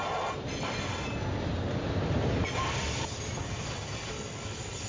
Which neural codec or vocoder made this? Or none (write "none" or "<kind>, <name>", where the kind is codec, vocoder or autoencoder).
none